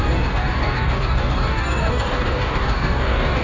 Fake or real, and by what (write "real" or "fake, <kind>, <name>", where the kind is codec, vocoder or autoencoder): fake, codec, DAC